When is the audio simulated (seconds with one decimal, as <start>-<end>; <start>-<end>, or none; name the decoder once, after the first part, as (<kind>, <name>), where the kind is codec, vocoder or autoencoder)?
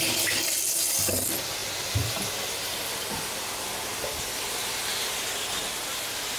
none